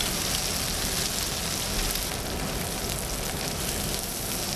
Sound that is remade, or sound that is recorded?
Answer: recorded